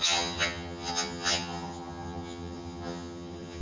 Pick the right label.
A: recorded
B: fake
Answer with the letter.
B